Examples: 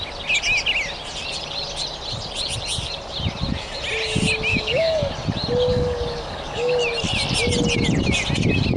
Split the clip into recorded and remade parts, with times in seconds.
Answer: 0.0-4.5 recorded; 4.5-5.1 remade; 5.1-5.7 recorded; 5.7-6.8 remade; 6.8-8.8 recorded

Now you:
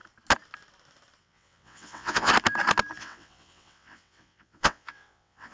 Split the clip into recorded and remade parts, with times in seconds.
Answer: 0.0-1.2 recorded; 1.2-2.3 remade; 2.3-3.0 recorded; 3.0-5.5 remade

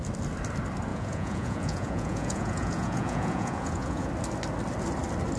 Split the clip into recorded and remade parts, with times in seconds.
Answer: 0.0-0.9 recorded; 0.9-4.1 remade; 4.1-5.4 recorded

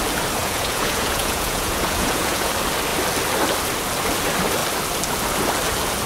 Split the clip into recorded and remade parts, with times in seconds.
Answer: 0.0-0.4 recorded; 0.4-2.5 remade; 2.5-6.1 recorded

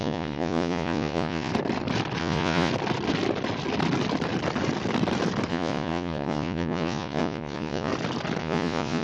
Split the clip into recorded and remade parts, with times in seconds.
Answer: 0.0-1.5 remade; 1.5-2.2 recorded; 2.2-2.7 remade; 2.7-5.5 recorded; 5.5-7.9 remade; 7.9-8.4 recorded; 8.4-9.0 remade

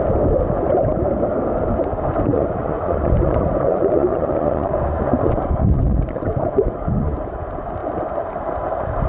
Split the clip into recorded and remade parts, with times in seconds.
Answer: 0.0-2.3 recorded; 2.3-7.2 remade; 7.2-9.1 recorded

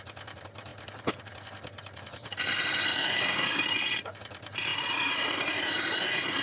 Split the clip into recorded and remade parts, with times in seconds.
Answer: 0.0-6.4 remade